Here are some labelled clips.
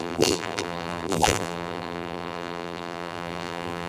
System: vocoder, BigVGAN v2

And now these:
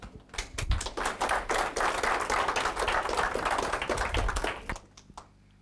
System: none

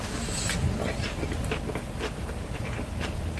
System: vocoder, BigVGAN v2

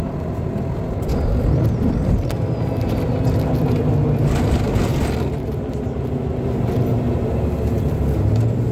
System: none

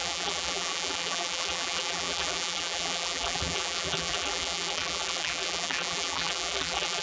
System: vocoder, BigVGAN v2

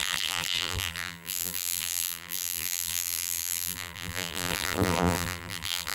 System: vocoder, BigVGAN v2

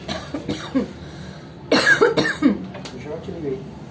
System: none